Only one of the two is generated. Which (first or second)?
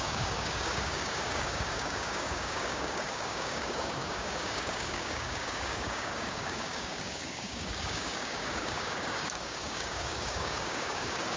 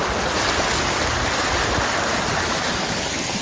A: first